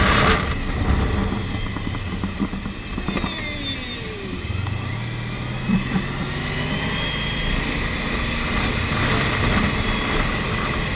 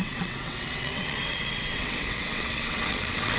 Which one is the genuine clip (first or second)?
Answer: first